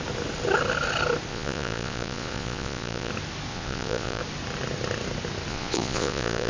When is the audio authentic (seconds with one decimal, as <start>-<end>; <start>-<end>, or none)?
0.0-1.3; 3.1-3.5; 4.2-5.5